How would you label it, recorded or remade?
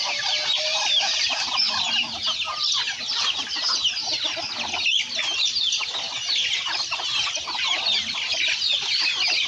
recorded